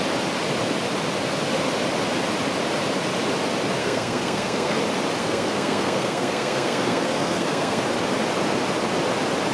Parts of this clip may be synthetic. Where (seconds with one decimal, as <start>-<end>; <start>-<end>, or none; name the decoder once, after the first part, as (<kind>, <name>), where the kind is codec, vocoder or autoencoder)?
3.8-4.8 (codec, SNAC); 5.2-7.8